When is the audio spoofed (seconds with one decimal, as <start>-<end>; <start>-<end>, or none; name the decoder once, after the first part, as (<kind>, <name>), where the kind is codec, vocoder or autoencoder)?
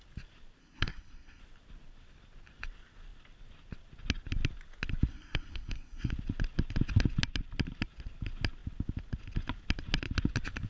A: 0.6-1.4 (codec, SNAC); 5.1-6.1